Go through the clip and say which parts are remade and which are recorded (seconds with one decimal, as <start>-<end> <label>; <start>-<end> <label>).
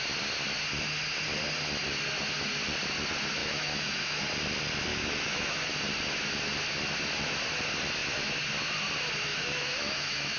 0.0-3.4 recorded; 3.4-4.2 remade; 4.2-4.9 recorded; 4.9-5.7 remade; 5.7-9.3 recorded; 9.3-10.4 remade